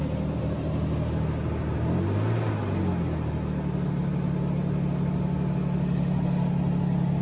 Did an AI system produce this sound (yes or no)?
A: no